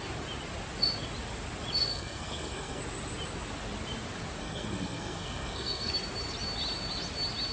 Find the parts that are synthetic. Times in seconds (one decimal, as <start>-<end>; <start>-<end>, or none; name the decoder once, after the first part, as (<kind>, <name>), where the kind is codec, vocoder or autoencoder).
1.9-2.8 (codec, SNAC); 4.4-5.9